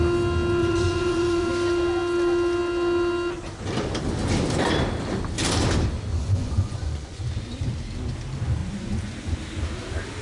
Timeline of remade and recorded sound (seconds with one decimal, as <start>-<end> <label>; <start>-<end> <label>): 0.0-0.6 recorded; 0.6-1.5 remade; 1.5-6.1 recorded; 6.1-7.2 remade; 7.2-8.6 recorded; 8.6-9.4 remade; 9.4-10.2 recorded